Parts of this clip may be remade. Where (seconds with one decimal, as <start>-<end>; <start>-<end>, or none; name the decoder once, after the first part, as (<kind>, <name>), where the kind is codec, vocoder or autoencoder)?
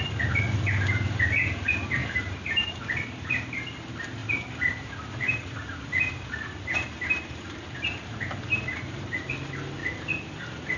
2.0-2.8 (vocoder, BigVGAN v2); 4.2-9.3